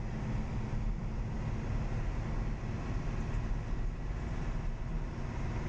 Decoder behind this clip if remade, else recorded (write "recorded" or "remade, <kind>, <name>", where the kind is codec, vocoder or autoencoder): recorded